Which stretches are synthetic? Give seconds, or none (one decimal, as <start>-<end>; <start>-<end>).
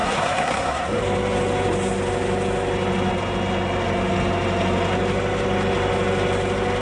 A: 0.0-1.0